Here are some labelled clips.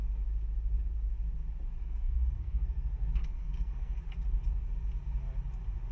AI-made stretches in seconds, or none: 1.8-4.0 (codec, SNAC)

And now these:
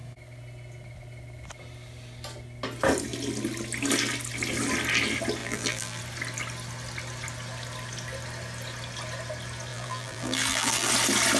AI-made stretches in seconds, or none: 5.4-6.0 (vocoder, BigVGAN v2); 9.7-10.9

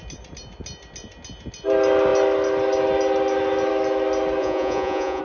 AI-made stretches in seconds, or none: 4.4-5.2 (vocoder, Vocos)